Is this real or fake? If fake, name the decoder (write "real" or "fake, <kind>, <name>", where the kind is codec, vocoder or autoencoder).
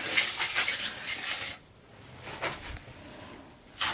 real